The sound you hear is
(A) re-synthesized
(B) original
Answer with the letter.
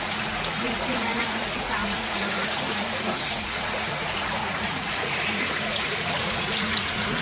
A